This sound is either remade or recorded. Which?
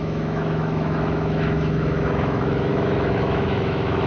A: remade